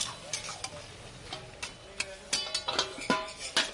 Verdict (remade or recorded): recorded